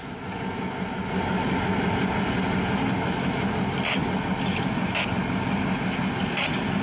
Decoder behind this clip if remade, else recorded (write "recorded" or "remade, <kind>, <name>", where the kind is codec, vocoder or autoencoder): recorded